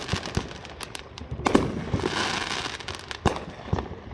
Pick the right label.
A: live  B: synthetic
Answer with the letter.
A